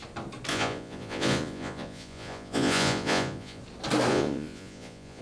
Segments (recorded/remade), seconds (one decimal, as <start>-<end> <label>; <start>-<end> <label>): 0.0-0.5 recorded; 0.5-3.6 remade; 3.6-4.1 recorded; 4.1-5.2 remade